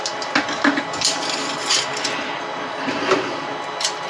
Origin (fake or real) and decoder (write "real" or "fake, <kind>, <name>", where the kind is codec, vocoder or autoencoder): real